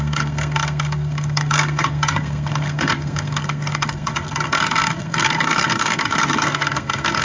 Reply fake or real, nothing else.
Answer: fake